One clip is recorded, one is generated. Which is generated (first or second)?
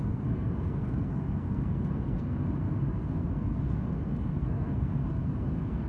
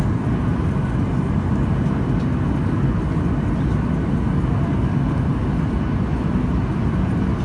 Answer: first